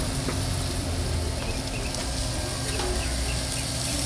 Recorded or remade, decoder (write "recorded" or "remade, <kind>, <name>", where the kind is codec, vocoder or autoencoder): recorded